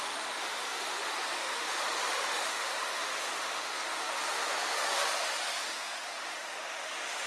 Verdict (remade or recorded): remade